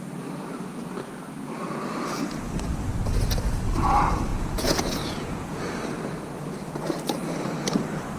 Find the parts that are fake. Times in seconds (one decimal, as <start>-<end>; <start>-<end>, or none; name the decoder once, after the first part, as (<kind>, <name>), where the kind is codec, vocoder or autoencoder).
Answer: 4.3-5.6 (vocoder, Vocos)